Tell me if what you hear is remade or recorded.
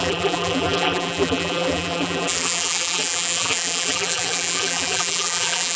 remade